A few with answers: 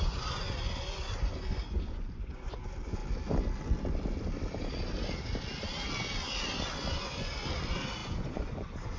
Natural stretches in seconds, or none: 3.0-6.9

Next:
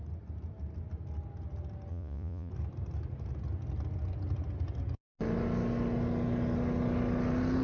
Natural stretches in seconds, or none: 0.0-1.9; 2.5-7.6

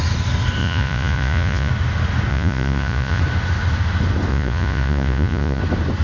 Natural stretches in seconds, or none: 0.0-0.6; 1.7-2.3; 3.2-4.3; 5.6-6.0

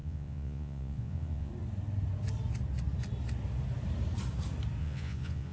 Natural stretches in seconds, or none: 1.5-4.8